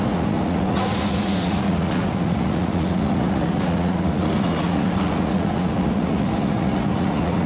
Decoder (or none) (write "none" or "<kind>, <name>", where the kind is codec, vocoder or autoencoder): vocoder, Vocos